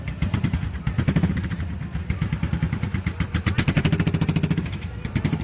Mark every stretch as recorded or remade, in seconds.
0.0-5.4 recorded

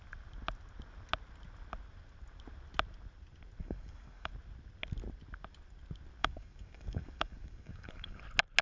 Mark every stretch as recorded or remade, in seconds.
0.0-3.6 recorded; 3.6-4.3 remade; 4.3-6.2 recorded; 6.2-8.2 remade; 8.2-8.6 recorded

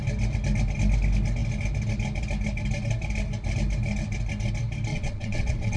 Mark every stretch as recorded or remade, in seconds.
0.0-4.9 recorded; 4.9-5.8 remade

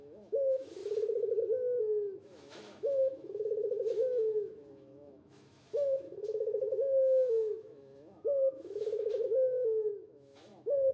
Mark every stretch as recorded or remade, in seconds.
0.0-0.8 remade; 0.8-1.8 recorded; 1.8-10.9 remade

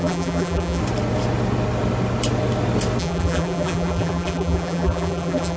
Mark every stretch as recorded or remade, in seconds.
0.0-0.8 remade; 0.8-3.0 recorded; 3.0-5.6 remade

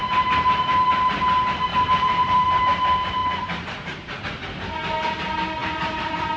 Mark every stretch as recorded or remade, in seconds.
0.0-1.7 recorded; 1.7-2.6 remade; 2.6-3.2 recorded; 3.2-4.2 remade; 4.2-5.6 recorded; 5.6-6.4 remade

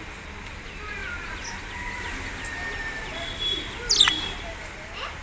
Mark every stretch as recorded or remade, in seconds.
0.0-5.2 recorded